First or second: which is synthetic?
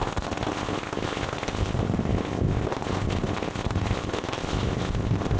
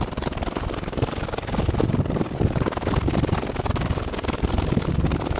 first